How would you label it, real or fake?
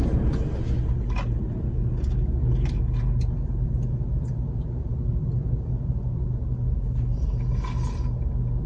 real